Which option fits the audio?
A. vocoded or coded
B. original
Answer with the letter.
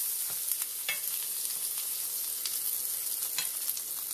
B